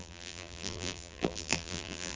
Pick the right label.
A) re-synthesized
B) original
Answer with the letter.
A